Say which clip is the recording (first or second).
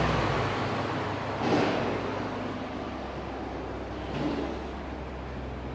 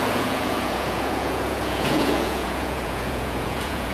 first